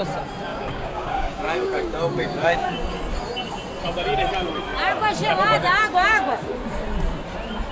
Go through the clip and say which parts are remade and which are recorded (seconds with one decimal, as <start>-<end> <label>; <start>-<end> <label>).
0.0-0.5 recorded; 0.5-2.7 remade; 2.7-7.7 recorded